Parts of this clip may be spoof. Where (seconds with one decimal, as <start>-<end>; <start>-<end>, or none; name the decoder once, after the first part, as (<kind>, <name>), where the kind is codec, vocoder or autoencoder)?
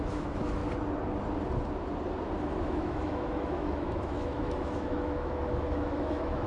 0.0-0.6 (autoencoder, DAC-VAE); 2.4-6.5